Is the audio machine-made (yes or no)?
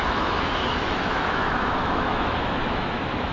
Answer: yes